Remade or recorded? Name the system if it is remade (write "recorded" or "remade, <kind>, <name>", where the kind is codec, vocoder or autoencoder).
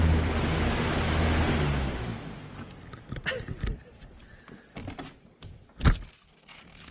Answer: recorded